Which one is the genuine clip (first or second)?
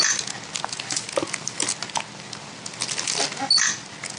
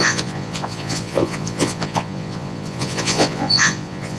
first